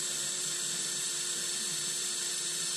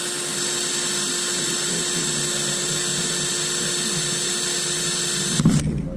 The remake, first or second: first